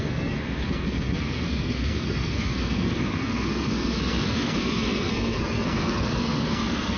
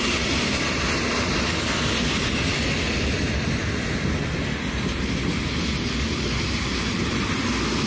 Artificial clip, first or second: first